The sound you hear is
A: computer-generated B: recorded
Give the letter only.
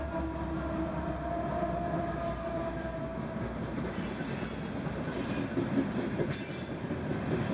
B